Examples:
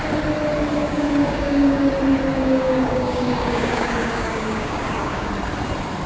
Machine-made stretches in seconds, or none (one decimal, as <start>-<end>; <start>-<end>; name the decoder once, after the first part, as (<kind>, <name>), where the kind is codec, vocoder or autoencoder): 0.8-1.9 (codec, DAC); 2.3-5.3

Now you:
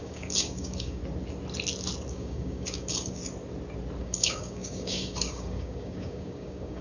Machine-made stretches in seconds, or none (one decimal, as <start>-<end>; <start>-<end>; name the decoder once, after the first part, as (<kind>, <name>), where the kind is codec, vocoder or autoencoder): 0.0-1.0 (codec, DAC); 2.1-3.2; 4.0-6.8

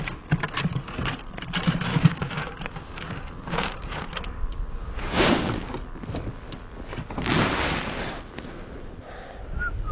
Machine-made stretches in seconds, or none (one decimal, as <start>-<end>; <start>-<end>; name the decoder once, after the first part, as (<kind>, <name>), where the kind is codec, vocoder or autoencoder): 1.9-4.1 (codec, DAC); 4.5-5.7

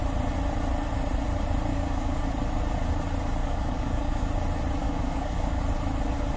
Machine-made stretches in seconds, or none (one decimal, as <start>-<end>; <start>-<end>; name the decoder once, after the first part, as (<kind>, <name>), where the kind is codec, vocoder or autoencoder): 1.7-2.2 (codec, DAC); 3.4-4.3; 4.8-5.6

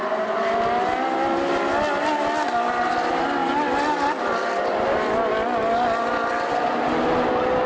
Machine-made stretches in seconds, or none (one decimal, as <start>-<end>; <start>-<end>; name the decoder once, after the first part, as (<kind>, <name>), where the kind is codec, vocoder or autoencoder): none

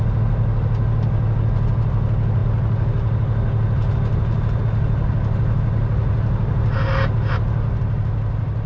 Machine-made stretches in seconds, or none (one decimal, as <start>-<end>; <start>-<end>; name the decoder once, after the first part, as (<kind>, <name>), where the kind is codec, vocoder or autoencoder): none

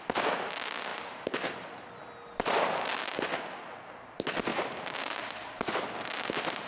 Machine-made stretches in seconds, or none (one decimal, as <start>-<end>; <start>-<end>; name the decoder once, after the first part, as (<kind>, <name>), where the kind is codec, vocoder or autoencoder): none

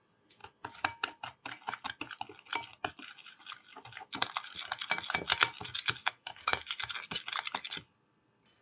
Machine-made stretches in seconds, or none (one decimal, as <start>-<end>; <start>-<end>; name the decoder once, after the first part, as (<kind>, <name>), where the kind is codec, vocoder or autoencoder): 6.0-6.8 (codec, DAC)